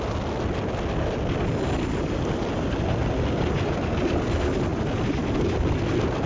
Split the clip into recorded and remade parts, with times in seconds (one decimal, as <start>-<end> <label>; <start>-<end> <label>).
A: 0.0-6.3 recorded